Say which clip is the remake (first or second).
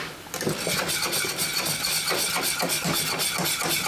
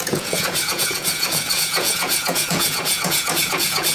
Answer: second